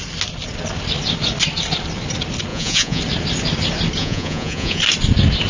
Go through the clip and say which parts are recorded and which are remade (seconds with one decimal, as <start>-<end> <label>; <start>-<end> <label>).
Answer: 0.0-2.5 recorded; 2.5-3.0 remade; 3.0-4.0 recorded; 4.0-4.8 remade; 4.8-5.5 recorded